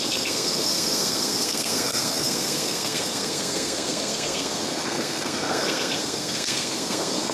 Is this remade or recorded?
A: remade